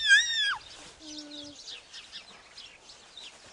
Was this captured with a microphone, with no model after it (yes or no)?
yes